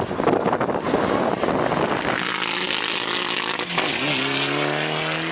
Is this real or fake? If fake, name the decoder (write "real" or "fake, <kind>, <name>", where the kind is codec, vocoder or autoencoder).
real